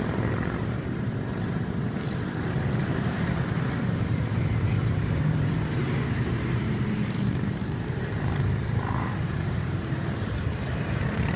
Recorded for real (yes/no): no